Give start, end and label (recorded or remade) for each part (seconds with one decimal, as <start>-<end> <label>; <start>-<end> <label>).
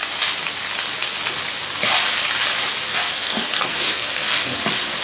0.0-2.9 recorded; 2.9-4.6 remade; 4.6-5.0 recorded